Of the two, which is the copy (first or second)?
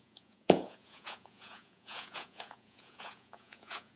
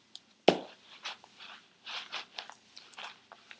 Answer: first